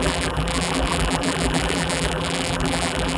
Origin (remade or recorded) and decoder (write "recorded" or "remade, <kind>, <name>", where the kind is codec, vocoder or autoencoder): remade, vocoder, BigVGAN v2